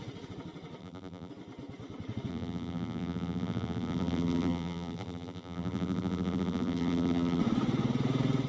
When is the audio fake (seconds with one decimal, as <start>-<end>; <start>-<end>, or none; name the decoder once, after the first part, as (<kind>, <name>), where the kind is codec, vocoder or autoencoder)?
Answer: 0.8-1.3 (vocoder, BigVGAN v2); 2.3-7.4